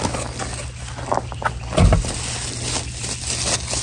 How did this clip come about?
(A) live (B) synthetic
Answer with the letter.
A